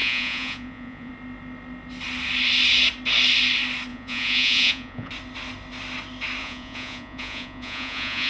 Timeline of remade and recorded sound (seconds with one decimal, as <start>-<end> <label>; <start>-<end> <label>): 0.0-1.1 remade; 1.1-3.9 recorded; 3.9-5.1 remade; 5.1-6.4 recorded; 6.4-8.3 remade